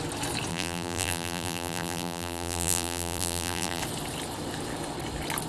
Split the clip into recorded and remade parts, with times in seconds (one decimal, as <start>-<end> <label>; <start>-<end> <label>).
0.0-0.5 recorded; 0.5-3.8 remade; 3.8-5.5 recorded